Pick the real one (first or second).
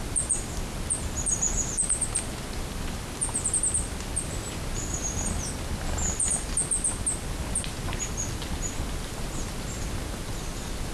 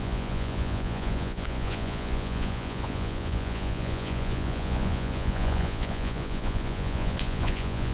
first